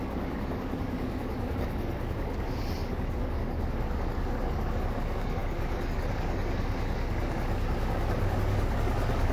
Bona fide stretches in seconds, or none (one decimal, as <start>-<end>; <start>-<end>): none